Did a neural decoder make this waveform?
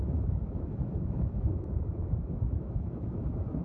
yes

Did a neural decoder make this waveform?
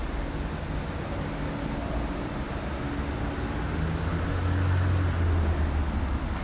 no